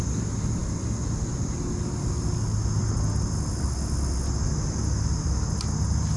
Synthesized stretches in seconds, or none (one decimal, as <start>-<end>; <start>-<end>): none